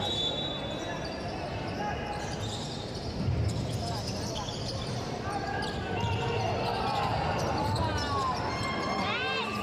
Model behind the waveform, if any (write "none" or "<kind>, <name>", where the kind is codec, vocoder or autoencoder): none